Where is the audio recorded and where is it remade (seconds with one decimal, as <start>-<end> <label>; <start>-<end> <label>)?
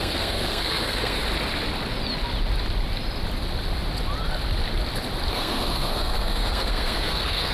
0.0-1.2 remade; 1.2-5.3 recorded; 5.3-7.5 remade